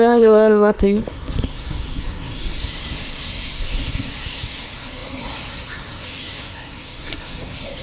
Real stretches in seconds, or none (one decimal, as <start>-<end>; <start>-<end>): none